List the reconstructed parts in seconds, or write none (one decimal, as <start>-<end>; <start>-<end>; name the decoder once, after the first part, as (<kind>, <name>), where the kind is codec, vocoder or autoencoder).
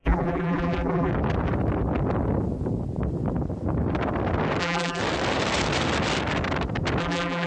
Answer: 0.0-1.1 (vocoder, BigVGAN v2); 4.6-5.0; 7.0-7.5